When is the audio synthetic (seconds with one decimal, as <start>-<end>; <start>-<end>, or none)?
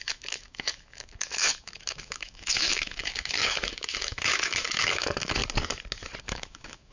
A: 0.0-5.4; 6.2-6.9